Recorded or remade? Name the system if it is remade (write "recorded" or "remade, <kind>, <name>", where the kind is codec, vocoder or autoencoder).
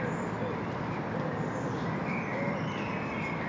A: recorded